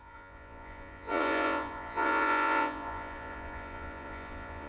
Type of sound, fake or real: fake